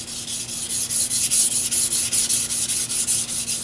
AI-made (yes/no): no